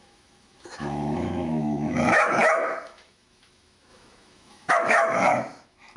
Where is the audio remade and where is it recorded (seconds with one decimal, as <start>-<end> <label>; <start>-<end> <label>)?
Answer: 0.0-6.0 remade